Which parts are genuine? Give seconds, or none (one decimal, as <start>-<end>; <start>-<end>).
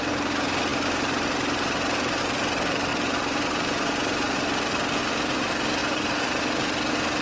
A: 0.0-2.9; 5.0-5.8; 6.4-7.2